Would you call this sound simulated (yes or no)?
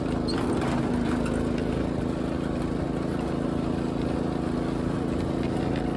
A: no